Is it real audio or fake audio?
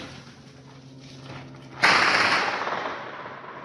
real